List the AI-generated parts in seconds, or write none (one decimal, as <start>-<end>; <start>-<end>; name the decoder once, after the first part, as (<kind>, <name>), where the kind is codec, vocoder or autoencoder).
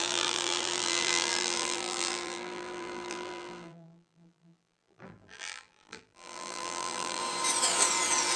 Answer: 0.0-7.2 (vocoder, BigVGAN v2)